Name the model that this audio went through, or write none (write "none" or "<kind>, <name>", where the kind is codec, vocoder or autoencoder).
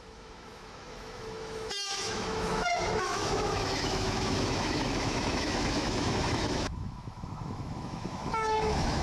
autoencoder, DAC-VAE